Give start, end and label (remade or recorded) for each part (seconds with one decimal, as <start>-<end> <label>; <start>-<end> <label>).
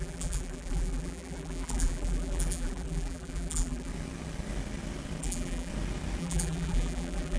0.0-3.9 remade; 3.9-5.2 recorded; 5.2-5.7 remade; 5.7-6.2 recorded; 6.2-7.4 remade